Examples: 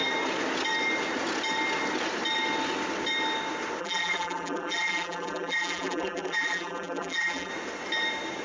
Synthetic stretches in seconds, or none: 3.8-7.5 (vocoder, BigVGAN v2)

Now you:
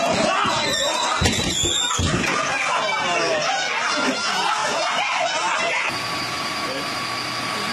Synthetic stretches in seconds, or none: 4.6-7.0 (vocoder, BigVGAN v2)

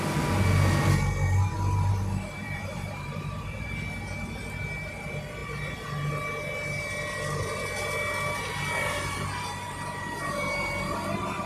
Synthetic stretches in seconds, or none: 2.4-3.7 (vocoder, BigVGAN v2)

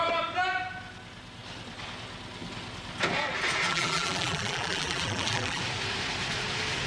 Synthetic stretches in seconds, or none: 3.7-5.6 (vocoder, BigVGAN v2)

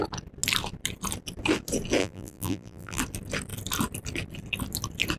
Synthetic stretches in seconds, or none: 2.0-3.0 (vocoder, BigVGAN v2)